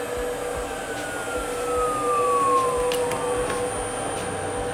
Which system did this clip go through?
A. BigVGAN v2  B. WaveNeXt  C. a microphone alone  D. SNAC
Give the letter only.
C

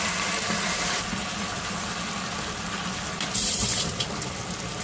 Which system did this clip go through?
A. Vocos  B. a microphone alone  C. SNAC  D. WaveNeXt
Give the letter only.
B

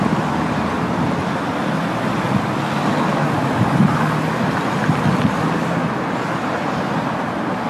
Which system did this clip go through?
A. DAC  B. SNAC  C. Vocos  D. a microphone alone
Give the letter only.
D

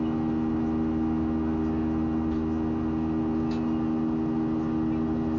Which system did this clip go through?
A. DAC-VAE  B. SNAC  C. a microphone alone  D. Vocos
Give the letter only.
C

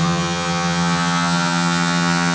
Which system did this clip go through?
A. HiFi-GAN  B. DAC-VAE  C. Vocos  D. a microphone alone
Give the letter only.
A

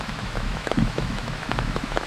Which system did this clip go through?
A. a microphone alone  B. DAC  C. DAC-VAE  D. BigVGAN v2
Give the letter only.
C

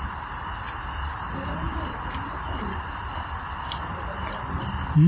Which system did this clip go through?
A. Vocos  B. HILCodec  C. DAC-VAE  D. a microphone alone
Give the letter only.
D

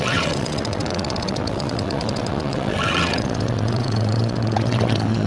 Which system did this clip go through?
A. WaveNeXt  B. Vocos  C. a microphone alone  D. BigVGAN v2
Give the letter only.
A